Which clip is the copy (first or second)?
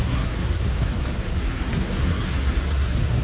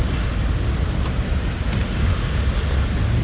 first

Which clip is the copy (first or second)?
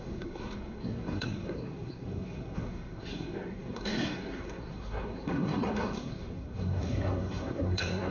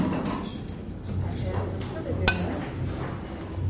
first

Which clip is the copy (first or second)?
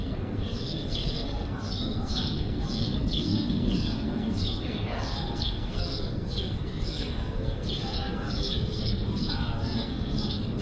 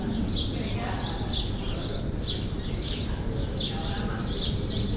first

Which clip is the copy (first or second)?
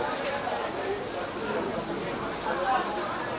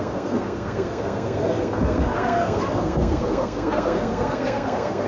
second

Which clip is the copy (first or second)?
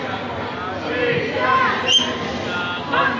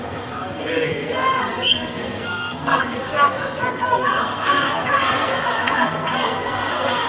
second